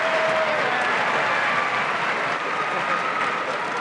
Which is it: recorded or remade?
recorded